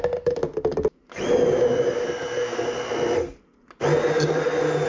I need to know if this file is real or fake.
real